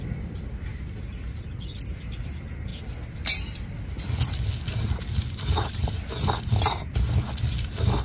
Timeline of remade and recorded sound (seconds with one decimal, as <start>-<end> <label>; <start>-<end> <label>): 0.0-8.0 recorded